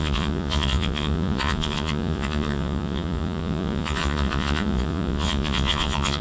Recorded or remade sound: remade